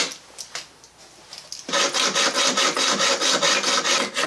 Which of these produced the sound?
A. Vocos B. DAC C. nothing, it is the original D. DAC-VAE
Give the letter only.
C